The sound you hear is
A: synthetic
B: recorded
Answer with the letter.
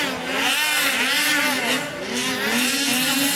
B